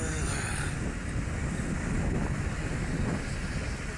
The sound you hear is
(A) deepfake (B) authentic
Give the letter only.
B